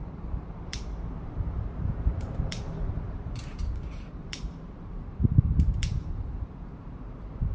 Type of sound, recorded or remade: remade